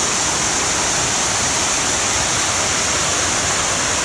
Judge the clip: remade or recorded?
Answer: recorded